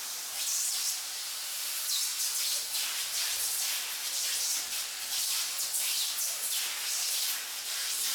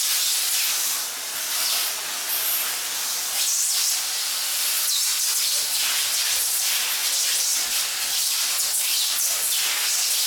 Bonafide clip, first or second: second